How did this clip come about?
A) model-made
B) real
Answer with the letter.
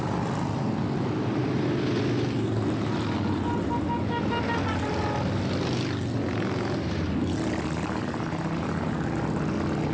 B